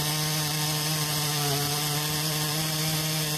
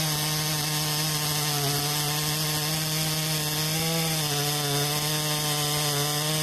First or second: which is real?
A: second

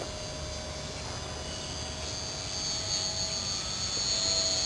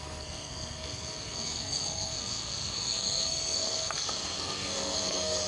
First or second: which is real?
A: first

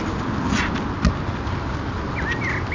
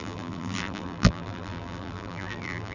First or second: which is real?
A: first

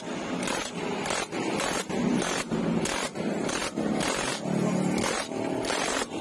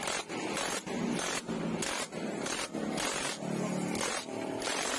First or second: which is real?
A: second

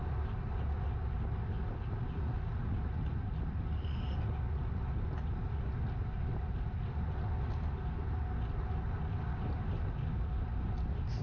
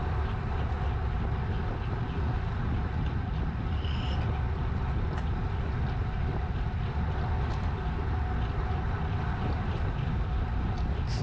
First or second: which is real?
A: first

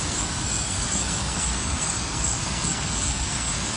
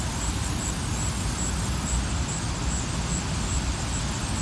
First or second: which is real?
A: second